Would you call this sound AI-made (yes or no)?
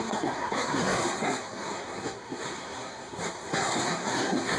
yes